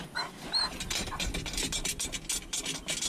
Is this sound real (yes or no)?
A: yes